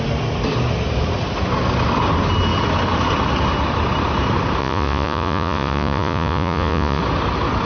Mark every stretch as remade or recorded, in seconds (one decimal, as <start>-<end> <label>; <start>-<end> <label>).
0.0-4.6 recorded; 4.6-7.0 remade; 7.0-7.7 recorded